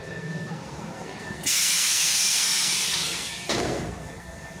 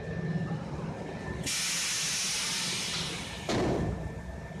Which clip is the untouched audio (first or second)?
second